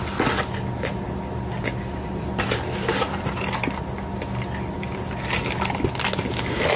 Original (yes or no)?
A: yes